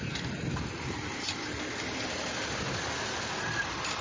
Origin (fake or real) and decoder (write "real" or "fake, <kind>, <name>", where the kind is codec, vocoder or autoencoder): real